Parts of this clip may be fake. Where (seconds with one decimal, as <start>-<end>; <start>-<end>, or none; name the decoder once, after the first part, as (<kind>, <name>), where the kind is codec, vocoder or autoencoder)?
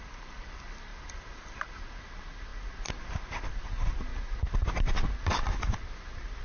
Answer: 0.0-2.5 (vocoder, BigVGAN v2); 3.5-4.1; 4.9-6.4